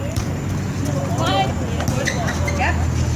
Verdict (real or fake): real